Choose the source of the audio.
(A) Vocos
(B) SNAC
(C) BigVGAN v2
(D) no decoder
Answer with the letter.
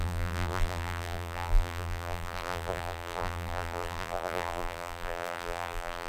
C